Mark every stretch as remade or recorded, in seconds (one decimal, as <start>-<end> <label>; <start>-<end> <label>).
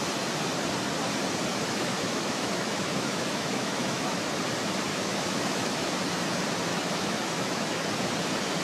0.0-1.5 recorded; 1.5-4.2 remade; 4.2-4.9 recorded; 4.9-5.9 remade; 5.9-6.7 recorded; 6.7-7.9 remade; 7.9-8.6 recorded